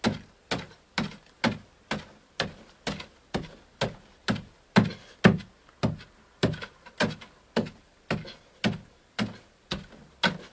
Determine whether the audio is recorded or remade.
recorded